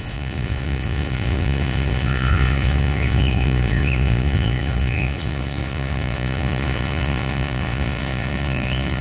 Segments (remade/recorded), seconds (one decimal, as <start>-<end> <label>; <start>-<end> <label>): 0.0-9.0 remade

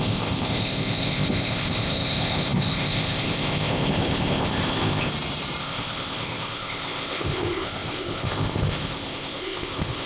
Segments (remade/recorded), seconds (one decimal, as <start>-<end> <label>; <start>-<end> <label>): 0.0-5.1 remade; 5.1-5.6 recorded; 5.6-10.1 remade

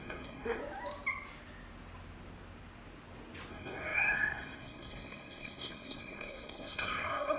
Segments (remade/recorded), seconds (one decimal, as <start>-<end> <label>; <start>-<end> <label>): 0.0-0.6 remade; 0.6-3.5 recorded; 3.5-7.4 remade

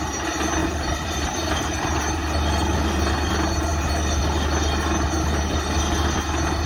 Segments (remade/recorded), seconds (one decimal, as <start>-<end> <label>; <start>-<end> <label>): 0.0-0.6 recorded; 0.6-1.8 remade; 1.8-6.7 recorded

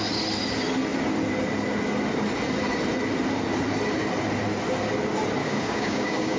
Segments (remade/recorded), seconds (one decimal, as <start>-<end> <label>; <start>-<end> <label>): 0.0-5.4 recorded; 5.4-6.4 remade

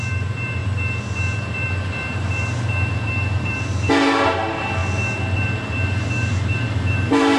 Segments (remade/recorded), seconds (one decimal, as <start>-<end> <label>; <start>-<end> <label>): 0.0-4.8 remade; 4.8-5.4 recorded; 5.4-7.4 remade

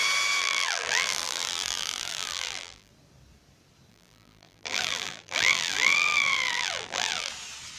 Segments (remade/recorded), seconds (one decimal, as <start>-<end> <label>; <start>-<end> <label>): 0.0-0.4 recorded; 0.4-2.9 remade; 2.9-3.9 recorded; 3.9-7.3 remade; 7.3-7.8 recorded

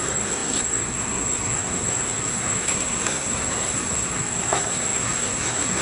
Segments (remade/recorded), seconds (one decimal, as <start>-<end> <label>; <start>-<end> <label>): 0.0-5.8 remade